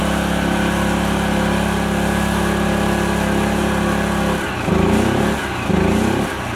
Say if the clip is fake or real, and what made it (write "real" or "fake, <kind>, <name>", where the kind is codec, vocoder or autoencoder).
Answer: real